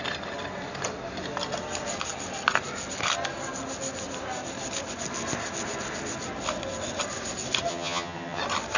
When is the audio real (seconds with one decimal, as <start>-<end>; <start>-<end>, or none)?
0.0-7.7; 8.4-8.8